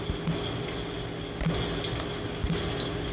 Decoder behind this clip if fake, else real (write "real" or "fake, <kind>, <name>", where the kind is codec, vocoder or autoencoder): real